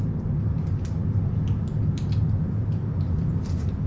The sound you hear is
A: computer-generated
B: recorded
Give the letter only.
B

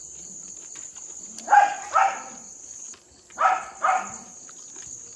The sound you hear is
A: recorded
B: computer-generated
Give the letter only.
A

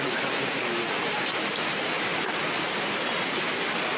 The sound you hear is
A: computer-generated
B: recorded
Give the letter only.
B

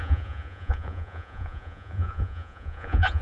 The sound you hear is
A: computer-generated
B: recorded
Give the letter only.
A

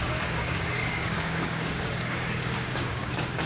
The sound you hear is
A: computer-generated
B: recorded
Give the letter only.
A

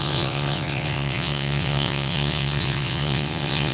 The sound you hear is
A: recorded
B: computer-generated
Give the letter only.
B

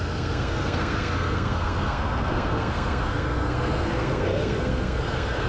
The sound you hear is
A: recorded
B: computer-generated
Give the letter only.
B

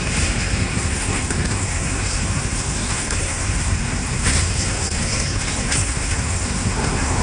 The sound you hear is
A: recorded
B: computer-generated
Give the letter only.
B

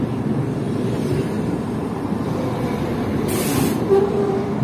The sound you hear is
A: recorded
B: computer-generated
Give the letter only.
A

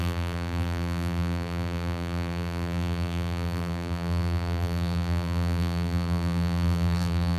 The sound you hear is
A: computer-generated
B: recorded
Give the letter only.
A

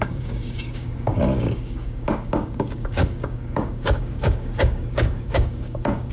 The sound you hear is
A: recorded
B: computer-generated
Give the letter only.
B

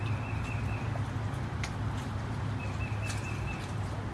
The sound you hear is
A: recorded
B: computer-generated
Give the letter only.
A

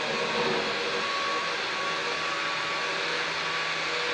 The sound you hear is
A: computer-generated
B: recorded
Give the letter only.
B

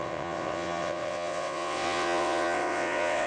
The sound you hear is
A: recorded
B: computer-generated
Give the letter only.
B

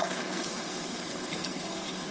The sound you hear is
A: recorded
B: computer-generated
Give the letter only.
B